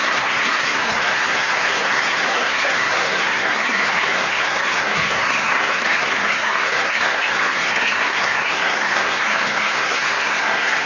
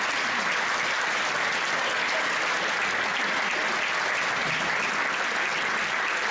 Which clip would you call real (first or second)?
second